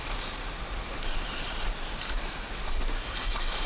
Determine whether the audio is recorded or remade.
remade